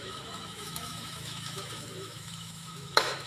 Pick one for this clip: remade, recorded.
remade